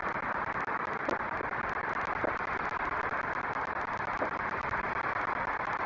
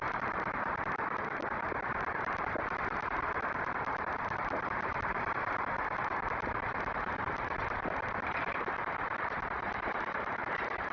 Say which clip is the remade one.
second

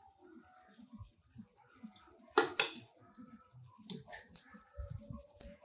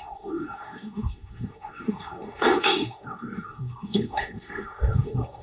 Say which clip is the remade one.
second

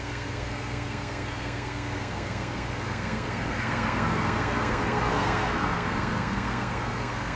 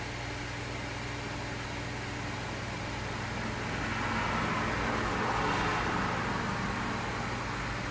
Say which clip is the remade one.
first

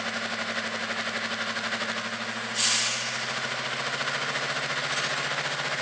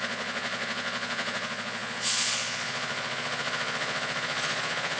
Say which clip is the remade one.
second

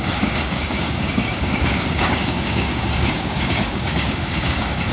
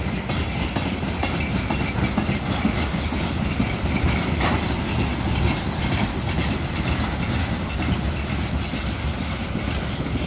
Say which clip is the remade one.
first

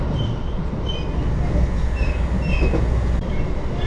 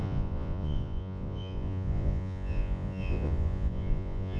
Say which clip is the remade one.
second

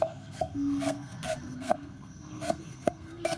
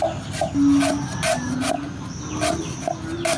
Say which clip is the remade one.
first